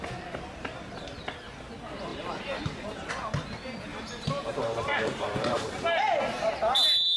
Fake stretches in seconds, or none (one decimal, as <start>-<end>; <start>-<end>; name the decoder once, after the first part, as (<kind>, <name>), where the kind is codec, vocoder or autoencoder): 2.1-3.1 (vocoder, BigVGAN v2); 3.9-6.0